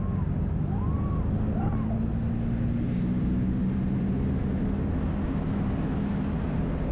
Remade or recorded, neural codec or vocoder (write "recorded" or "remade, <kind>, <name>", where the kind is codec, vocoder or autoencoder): recorded